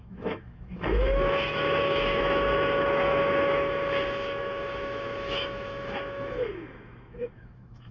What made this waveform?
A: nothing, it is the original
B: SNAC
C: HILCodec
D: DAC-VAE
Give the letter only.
D